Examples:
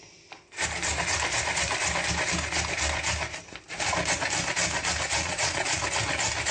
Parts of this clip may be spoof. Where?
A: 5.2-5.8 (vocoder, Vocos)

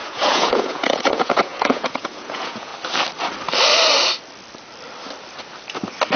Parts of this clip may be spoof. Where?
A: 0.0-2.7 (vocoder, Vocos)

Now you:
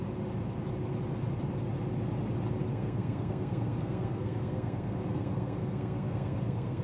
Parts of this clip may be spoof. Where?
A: 2.7-6.8 (codec, SNAC)

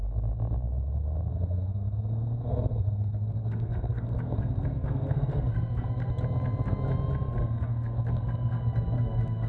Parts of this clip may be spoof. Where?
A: 1.3-6.1 (codec, SNAC); 7.4-9.5